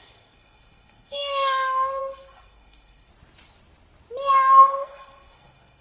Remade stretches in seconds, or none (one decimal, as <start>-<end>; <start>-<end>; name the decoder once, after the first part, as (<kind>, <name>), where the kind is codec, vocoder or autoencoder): 0.0-3.1 (codec, SNAC); 4.3-5.8